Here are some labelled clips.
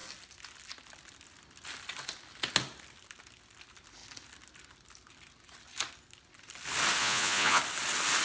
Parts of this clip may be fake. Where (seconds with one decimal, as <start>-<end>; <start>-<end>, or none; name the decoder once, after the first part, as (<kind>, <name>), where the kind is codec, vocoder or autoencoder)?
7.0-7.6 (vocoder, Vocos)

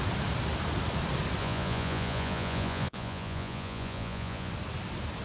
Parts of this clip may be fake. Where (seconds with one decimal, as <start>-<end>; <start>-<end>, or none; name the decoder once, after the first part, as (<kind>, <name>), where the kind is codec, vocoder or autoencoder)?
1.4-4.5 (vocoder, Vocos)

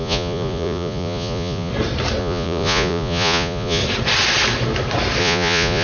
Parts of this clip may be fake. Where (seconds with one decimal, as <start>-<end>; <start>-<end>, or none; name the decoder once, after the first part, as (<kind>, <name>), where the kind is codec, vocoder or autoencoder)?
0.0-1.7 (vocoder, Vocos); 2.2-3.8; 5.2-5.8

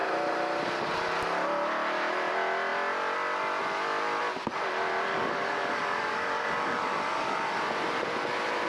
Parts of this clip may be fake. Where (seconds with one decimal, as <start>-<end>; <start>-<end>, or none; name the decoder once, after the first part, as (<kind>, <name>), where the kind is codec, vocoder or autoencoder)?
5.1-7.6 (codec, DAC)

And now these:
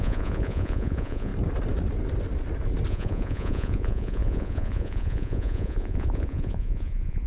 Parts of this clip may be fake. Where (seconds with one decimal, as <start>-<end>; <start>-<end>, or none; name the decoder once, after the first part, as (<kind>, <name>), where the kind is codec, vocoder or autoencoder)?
0.0-1.3 (vocoder, Vocos); 2.9-7.3

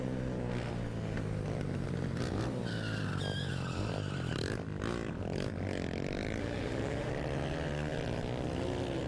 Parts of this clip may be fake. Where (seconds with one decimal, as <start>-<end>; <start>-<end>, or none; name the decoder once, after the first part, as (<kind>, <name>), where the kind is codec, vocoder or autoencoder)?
6.4-7.1 (autoencoder, DAC-VAE)

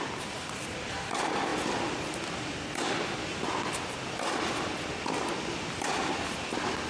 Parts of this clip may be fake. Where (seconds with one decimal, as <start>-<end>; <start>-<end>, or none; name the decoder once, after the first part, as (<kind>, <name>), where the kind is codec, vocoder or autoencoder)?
none

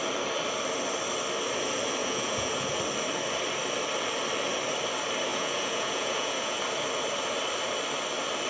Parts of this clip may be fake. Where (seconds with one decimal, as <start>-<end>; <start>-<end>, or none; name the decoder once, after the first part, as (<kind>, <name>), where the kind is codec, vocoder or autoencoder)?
2.0-2.8 (vocoder, Vocos); 5.3-6.6